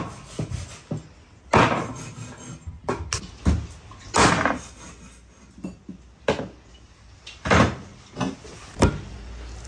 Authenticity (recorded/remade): recorded